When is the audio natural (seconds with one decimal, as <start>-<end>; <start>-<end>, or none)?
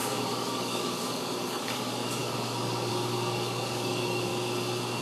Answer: 4.3-5.0